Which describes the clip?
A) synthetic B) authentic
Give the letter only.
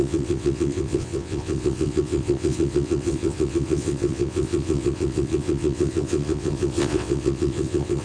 A